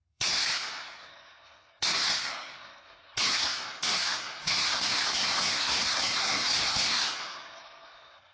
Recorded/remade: remade